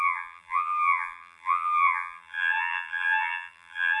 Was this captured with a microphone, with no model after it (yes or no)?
no